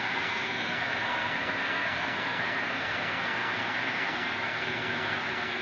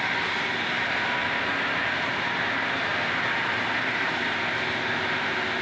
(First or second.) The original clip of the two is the second